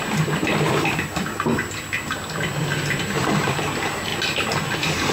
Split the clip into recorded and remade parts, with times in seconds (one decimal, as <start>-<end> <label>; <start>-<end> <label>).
0.0-5.1 recorded